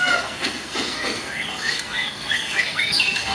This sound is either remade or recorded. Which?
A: remade